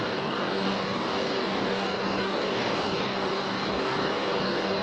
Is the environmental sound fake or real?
fake